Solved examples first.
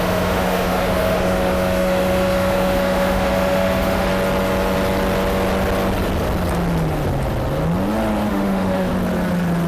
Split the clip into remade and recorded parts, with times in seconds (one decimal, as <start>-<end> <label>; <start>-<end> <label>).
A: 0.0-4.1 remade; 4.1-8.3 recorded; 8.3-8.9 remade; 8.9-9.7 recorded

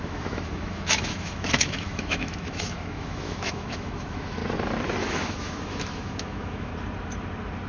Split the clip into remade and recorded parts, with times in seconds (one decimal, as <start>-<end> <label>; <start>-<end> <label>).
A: 0.0-4.4 remade; 4.4-5.0 recorded; 5.0-6.7 remade; 6.7-7.7 recorded

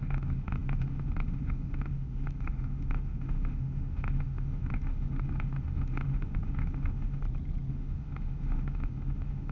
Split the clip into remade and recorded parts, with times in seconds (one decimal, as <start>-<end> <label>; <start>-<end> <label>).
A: 0.0-7.2 remade; 7.2-7.7 recorded; 7.7-9.5 remade